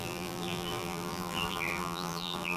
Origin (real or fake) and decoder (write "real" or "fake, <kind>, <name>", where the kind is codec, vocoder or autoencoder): fake, vocoder, BigVGAN v2